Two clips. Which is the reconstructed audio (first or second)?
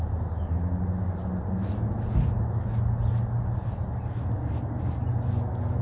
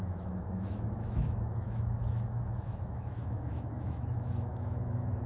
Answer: second